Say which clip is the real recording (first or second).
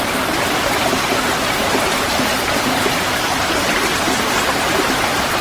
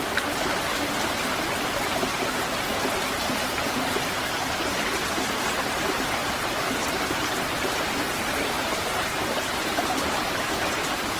second